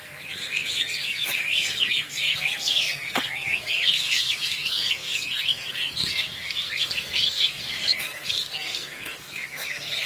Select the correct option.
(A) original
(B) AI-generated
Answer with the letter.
B